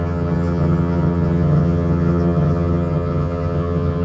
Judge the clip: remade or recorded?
remade